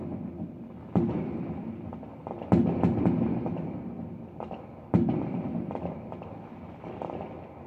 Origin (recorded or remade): recorded